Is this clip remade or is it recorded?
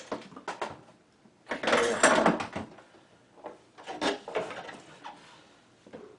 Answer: recorded